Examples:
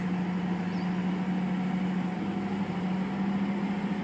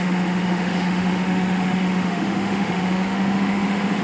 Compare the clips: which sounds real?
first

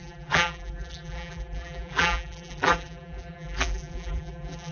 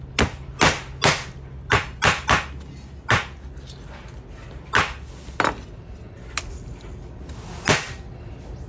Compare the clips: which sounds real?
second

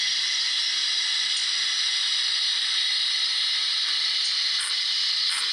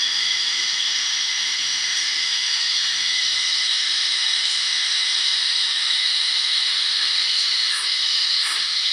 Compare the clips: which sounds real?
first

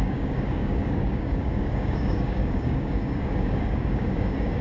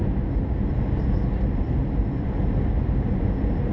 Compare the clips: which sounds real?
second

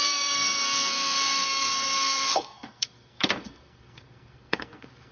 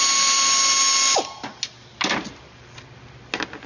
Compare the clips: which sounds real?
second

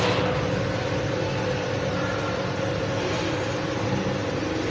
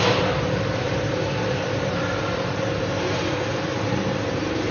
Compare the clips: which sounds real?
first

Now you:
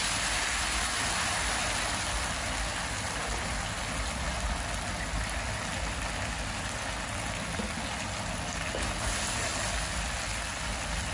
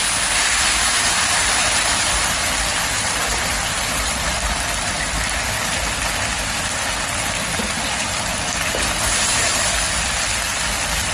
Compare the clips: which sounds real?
first